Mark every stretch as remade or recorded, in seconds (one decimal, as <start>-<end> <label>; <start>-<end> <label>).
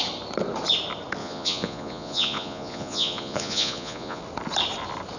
0.0-1.2 recorded; 1.2-4.2 remade; 4.2-5.2 recorded